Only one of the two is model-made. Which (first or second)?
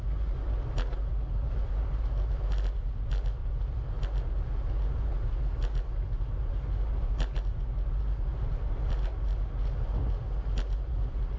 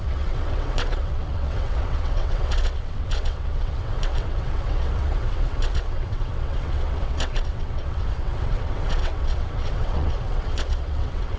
second